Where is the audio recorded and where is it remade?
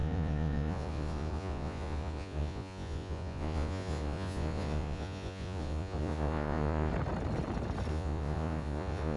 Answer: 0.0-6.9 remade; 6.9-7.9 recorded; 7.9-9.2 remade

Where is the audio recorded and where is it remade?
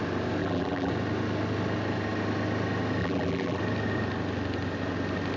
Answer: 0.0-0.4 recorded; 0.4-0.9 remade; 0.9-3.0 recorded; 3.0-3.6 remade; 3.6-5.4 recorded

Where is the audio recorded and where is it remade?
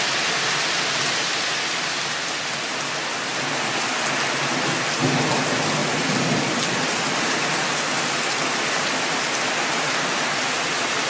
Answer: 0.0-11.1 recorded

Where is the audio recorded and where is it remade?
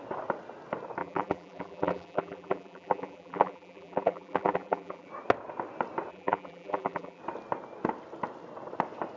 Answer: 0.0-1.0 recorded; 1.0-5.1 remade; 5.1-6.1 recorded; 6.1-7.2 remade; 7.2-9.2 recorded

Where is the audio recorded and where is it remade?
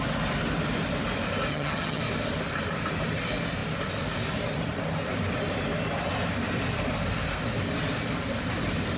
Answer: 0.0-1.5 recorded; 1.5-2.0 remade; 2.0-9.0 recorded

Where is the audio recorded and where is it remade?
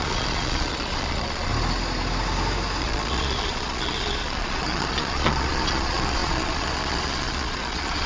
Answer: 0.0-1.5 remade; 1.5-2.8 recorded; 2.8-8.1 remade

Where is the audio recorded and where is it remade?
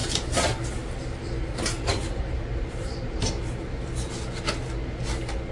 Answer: 0.0-3.3 remade; 3.3-5.5 recorded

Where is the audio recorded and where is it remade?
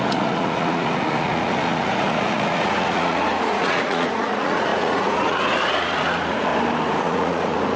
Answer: 0.0-6.5 remade; 6.5-7.0 recorded; 7.0-7.8 remade